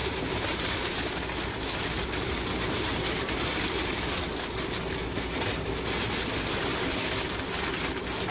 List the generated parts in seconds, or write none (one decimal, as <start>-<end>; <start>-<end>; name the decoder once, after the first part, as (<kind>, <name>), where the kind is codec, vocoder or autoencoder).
0.0-1.1 (vocoder, BigVGAN v2)